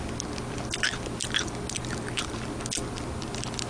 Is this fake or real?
real